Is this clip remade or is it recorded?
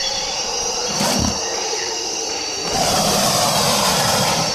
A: remade